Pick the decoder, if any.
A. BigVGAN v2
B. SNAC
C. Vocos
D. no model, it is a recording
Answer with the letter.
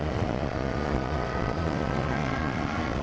C